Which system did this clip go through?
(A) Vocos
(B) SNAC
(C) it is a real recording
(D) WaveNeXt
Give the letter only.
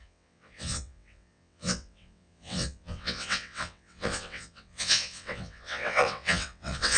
D